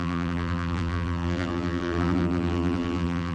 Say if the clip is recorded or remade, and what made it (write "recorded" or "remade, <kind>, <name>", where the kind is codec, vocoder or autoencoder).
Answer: remade, vocoder, BigVGAN v2